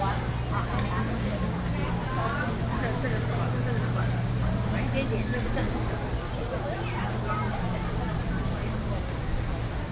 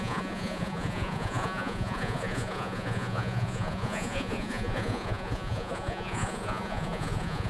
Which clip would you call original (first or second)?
first